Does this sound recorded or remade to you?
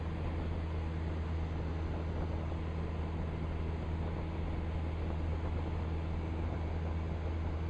recorded